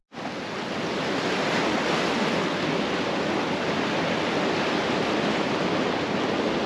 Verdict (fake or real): real